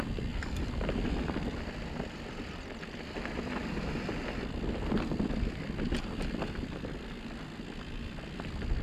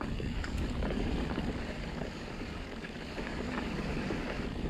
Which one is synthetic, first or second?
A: second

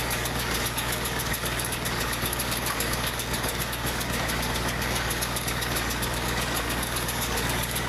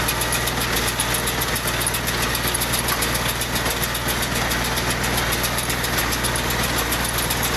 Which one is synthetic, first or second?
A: first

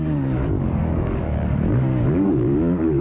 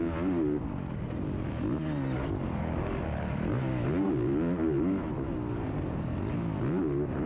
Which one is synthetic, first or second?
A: first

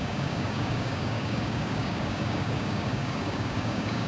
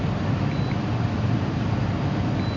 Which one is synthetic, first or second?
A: first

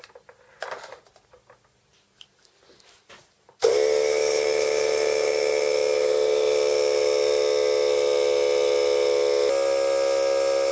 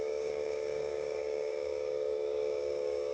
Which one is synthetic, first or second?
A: second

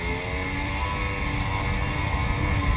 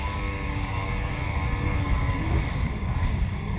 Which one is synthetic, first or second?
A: second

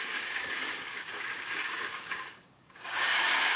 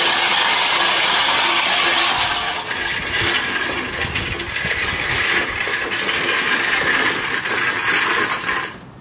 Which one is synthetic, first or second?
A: first